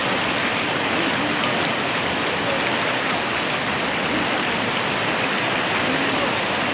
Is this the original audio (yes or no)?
yes